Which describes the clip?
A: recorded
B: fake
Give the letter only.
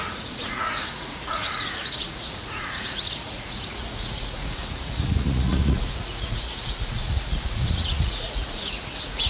B